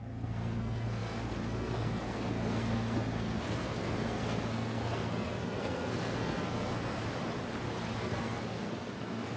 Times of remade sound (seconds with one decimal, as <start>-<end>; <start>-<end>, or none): 0.0-7.0; 8.0-9.4